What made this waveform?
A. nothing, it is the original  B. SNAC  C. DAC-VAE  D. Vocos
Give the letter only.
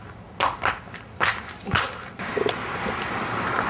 A